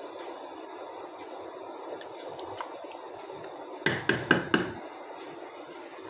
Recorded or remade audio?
recorded